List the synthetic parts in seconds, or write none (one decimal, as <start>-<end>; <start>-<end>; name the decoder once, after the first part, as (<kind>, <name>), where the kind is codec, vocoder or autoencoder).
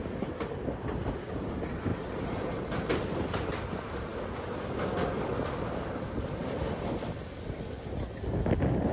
1.9-3.1 (vocoder, BigVGAN v2)